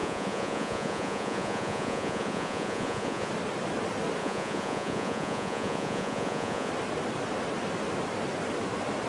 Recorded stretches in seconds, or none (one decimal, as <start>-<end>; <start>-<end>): 3.3-4.2; 6.7-9.1